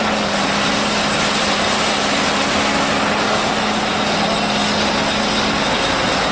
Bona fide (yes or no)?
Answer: yes